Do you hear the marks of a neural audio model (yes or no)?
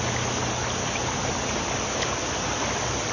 no